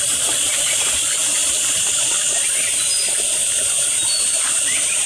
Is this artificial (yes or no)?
no